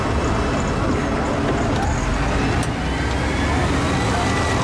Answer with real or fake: real